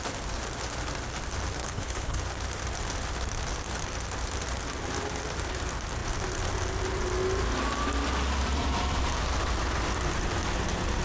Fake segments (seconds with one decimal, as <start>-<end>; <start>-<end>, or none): 1.6-2.2